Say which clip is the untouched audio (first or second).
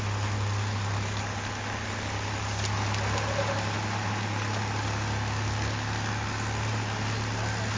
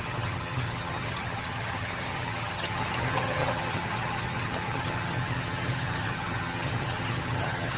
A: first